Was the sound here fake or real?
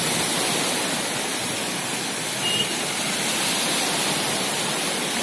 real